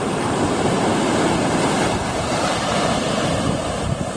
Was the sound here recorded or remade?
remade